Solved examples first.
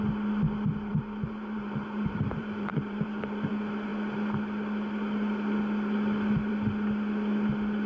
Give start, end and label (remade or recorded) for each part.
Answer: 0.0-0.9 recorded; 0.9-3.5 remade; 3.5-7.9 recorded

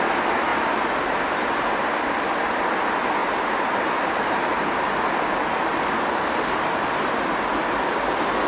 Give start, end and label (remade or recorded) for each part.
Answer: 0.0-3.2 recorded; 3.2-5.6 remade; 5.6-8.5 recorded

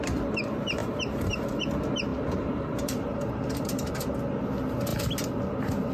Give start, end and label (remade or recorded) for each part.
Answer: 0.0-0.8 recorded; 0.8-1.6 remade; 1.6-2.1 recorded; 2.1-3.9 remade; 3.9-5.9 recorded

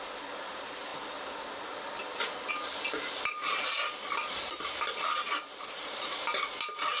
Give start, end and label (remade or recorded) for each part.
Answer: 0.0-7.0 recorded

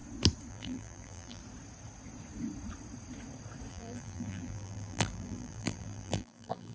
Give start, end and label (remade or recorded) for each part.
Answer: 0.0-0.5 recorded; 0.5-1.4 remade; 1.4-3.7 recorded; 3.7-6.7 remade